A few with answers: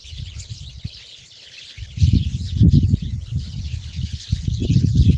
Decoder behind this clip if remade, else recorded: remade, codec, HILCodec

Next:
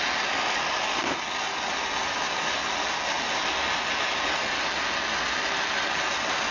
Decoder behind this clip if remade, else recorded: recorded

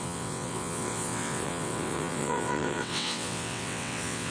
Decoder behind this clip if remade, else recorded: remade, vocoder, WaveNeXt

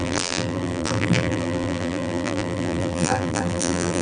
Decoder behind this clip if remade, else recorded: remade, vocoder, BigVGAN v2